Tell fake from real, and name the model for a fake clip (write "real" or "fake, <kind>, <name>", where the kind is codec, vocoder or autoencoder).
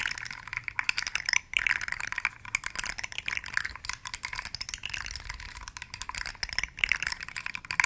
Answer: real